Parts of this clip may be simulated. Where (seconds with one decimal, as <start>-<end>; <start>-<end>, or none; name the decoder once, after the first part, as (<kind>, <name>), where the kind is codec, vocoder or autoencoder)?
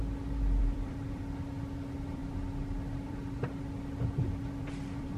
0.6-5.2 (vocoder, BigVGAN v2)